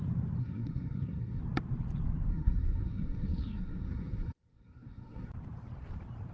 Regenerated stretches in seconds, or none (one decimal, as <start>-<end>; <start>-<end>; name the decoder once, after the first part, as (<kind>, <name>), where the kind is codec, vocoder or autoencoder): 0.4-1.4 (codec, SNAC); 2.3-5.3

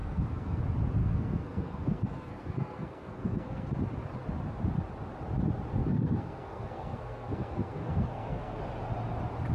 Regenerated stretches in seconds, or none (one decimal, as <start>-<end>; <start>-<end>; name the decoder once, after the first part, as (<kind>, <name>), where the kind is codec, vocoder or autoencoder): 0.0-0.6 (codec, SNAC); 1.0-3.7; 5.8-8.6

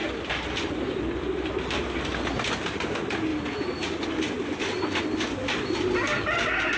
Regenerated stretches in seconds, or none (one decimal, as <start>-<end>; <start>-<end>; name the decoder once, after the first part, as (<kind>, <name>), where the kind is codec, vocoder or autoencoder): none

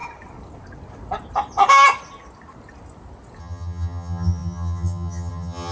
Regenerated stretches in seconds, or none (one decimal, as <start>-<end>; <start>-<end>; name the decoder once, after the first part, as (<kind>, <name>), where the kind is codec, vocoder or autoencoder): 3.4-5.7 (vocoder, HiFi-GAN)

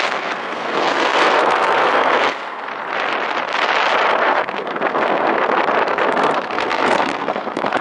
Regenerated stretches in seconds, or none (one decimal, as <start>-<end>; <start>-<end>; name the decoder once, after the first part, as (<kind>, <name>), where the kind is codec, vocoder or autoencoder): 0.0-2.7 (codec, SNAC); 4.1-5.4; 5.9-7.8